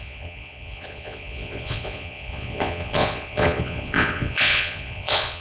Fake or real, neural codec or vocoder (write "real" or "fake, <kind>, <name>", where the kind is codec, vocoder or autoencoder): fake, vocoder, Vocos